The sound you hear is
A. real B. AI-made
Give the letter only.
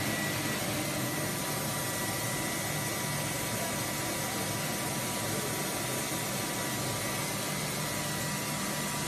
A